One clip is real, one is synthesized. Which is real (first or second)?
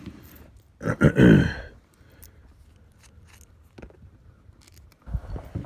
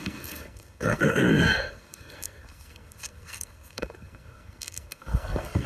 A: first